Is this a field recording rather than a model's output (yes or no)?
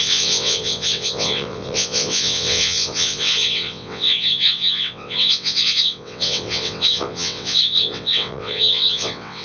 no